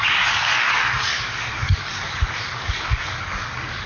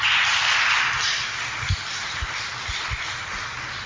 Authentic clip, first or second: second